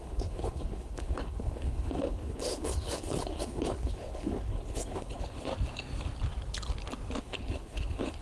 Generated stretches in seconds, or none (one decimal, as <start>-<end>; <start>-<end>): 0.0-5.5; 7.2-8.2